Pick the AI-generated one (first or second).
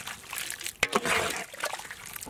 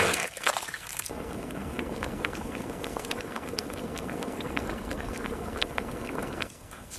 second